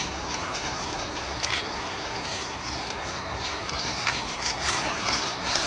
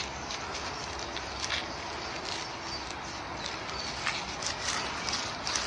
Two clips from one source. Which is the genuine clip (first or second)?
second